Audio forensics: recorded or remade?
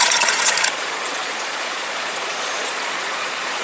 remade